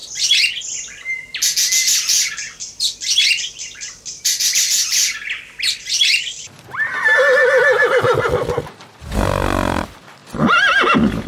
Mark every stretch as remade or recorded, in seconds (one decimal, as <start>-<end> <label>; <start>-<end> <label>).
0.0-4.2 recorded; 4.2-11.3 remade